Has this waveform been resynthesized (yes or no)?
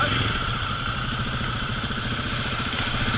yes